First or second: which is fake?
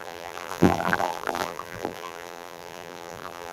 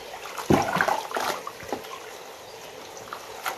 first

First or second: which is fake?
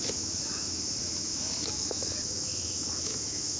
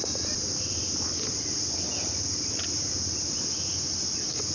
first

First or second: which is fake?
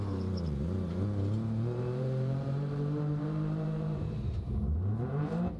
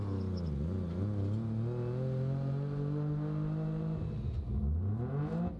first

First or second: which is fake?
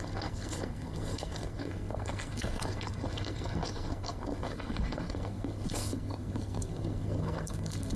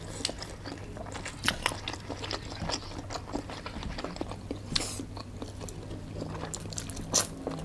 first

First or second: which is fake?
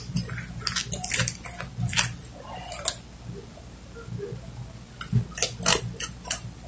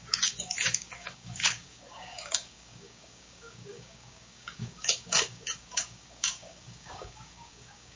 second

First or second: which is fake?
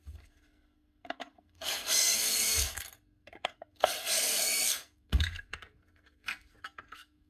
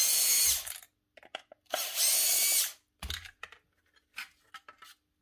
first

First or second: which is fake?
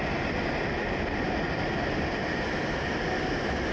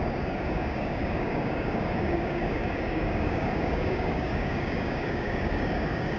second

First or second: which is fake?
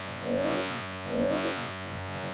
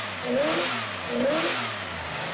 first